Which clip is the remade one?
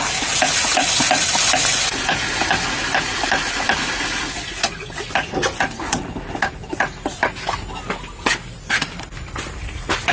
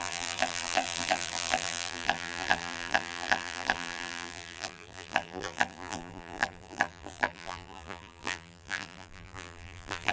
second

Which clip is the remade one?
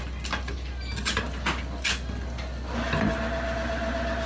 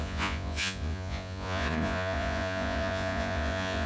second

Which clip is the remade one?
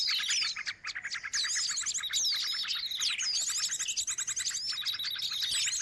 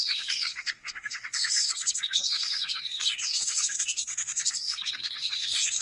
second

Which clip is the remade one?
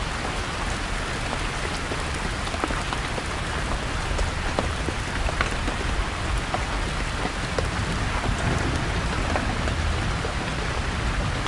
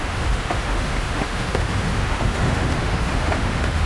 second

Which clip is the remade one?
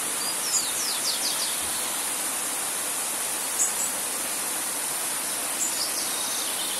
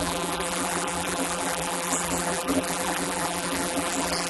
second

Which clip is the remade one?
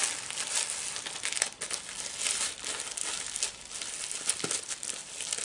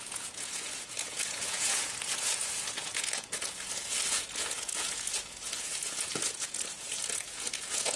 second